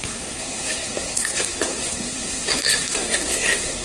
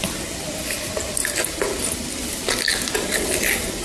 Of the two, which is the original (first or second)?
second